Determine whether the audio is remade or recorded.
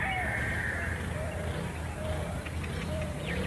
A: recorded